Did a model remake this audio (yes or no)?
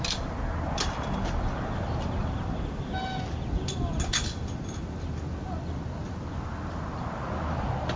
no